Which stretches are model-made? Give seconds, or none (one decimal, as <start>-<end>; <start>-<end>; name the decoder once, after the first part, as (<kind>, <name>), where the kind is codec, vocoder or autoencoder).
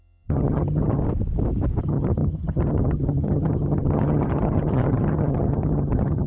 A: 0.0-1.0 (vocoder, HiFi-GAN); 1.8-6.3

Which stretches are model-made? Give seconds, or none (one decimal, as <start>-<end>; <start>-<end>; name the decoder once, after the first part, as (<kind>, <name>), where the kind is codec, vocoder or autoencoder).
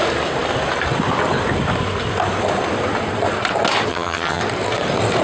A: 3.9-4.4 (vocoder, HiFi-GAN)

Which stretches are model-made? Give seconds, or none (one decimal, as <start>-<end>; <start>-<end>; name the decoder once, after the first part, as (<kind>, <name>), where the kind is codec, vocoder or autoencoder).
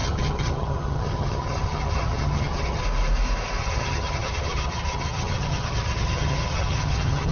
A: 0.0-2.8 (vocoder, HiFi-GAN); 3.6-7.3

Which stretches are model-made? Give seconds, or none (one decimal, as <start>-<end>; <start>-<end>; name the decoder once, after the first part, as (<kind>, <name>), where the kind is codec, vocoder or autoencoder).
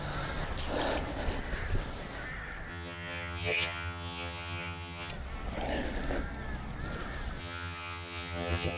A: 2.7-5.1 (vocoder, HiFi-GAN); 7.4-8.8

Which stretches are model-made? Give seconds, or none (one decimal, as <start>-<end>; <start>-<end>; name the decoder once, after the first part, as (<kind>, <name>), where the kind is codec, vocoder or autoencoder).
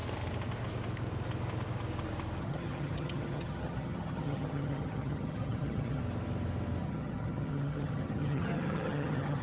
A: 2.4-6.0 (vocoder, HiFi-GAN); 6.8-9.4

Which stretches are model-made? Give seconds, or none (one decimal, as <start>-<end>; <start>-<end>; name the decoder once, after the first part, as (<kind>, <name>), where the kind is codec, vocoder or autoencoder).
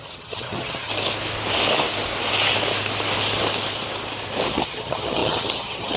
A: 0.0-0.9 (vocoder, HiFi-GAN); 4.5-6.0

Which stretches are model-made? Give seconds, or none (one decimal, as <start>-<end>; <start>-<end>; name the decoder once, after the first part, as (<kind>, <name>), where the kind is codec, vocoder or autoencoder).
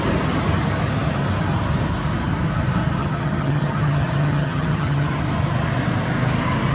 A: 3.0-5.2 (vocoder, HiFi-GAN)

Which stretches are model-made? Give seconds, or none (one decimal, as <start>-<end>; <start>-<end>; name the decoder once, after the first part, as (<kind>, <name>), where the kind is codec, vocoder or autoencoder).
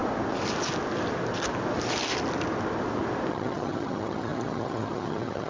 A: 3.3-5.5 (vocoder, HiFi-GAN)